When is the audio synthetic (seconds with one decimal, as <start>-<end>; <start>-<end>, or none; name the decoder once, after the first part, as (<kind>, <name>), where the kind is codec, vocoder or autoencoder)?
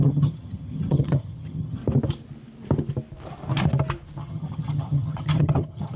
0.0-1.8 (vocoder, HiFi-GAN); 4.2-6.0